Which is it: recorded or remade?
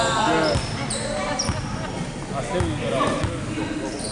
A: recorded